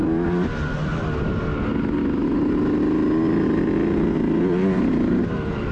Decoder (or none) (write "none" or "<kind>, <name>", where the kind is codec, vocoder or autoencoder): none